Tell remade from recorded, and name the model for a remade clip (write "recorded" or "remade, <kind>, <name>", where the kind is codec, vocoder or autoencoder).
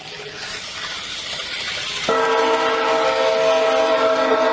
recorded